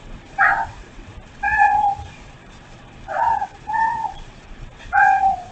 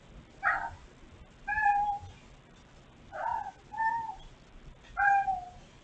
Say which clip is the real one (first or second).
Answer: second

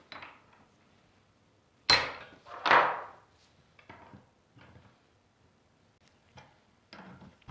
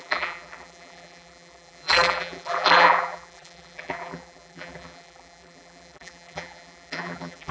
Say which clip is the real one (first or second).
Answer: first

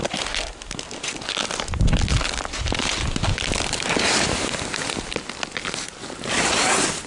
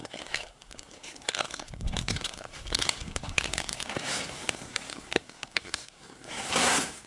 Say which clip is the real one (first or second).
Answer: first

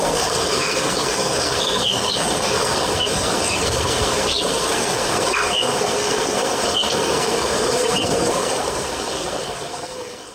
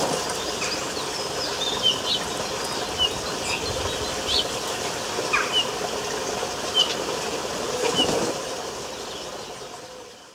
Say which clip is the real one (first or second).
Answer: second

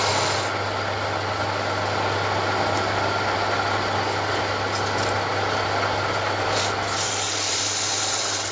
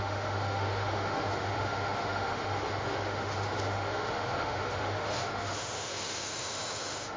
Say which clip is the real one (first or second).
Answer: first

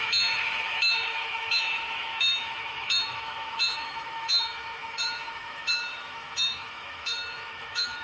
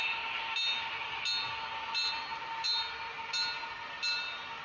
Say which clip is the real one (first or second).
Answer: second